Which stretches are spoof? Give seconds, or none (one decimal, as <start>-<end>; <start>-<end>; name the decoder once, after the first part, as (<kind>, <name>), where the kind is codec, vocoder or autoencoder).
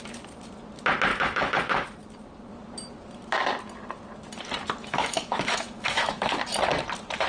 1.1-2.0 (autoencoder, DAC-VAE); 4.8-6.3